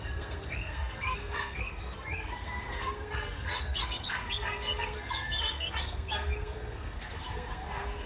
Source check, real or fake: fake